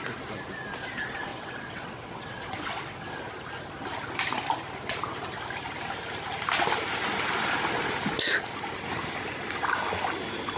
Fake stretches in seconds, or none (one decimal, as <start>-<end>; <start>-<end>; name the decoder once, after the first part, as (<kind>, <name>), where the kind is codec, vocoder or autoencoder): 1.3-3.2 (vocoder, WaveNeXt)